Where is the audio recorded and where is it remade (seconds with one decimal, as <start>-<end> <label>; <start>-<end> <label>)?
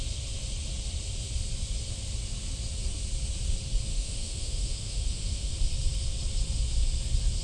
0.0-3.9 recorded; 3.9-5.5 remade; 5.5-7.4 recorded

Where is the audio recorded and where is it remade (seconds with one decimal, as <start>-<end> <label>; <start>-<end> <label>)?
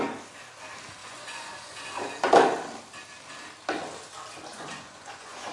0.0-1.0 recorded; 1.0-1.9 remade; 1.9-4.5 recorded; 4.5-5.5 remade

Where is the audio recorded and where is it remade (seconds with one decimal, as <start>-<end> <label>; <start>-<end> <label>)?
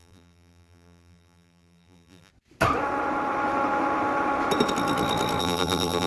0.0-2.3 remade; 2.3-5.4 recorded; 5.4-6.1 remade